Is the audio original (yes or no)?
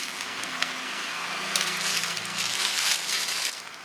no